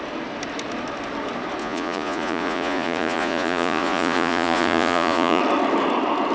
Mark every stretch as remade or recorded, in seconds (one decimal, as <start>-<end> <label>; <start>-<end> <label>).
0.0-1.6 recorded; 1.6-5.4 remade; 5.4-6.3 recorded